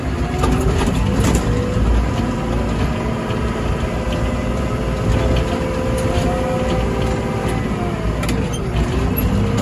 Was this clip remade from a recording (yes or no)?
no